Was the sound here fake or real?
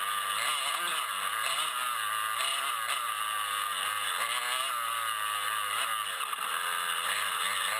real